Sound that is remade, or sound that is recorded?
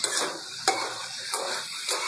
recorded